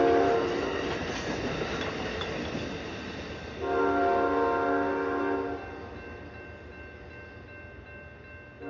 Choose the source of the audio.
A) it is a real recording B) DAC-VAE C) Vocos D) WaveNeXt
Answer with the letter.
A